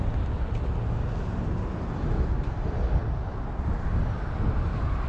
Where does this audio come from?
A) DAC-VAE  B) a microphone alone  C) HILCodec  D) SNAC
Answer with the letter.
B